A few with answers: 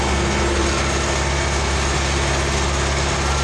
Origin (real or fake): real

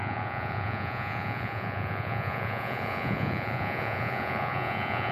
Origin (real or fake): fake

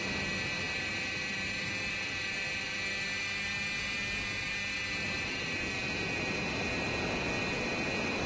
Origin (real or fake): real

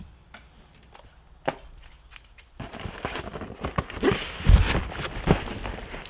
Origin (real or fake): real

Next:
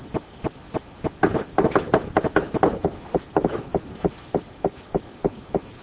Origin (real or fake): real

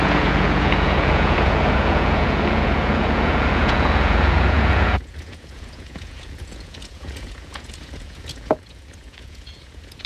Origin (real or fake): fake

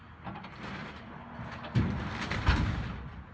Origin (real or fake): real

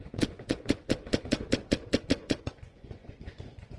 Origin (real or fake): fake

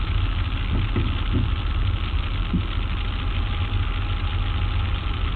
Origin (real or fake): real